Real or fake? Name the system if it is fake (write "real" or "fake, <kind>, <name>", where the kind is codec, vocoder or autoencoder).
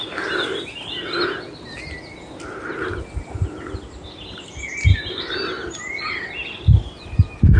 real